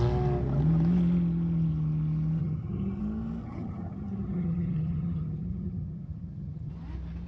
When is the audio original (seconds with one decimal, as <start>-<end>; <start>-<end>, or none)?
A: 0.0-2.4; 3.0-3.4; 6.7-7.3